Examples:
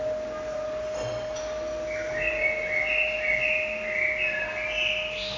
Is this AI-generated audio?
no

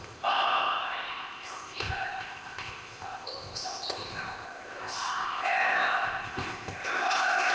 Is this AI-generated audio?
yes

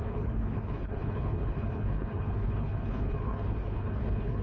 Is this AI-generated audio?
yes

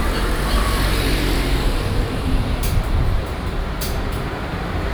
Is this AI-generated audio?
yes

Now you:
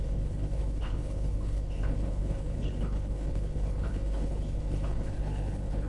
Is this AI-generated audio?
yes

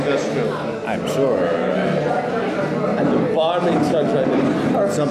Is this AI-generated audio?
no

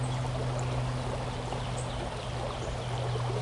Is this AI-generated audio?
no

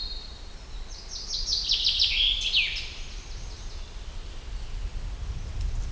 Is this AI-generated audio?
no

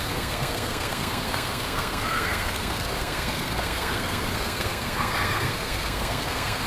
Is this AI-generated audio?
yes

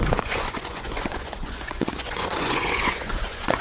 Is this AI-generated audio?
yes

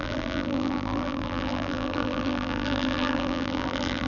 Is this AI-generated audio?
yes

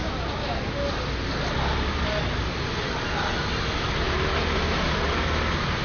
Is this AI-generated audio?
no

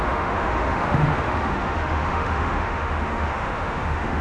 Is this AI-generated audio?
yes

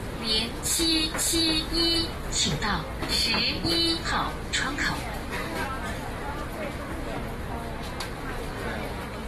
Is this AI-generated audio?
no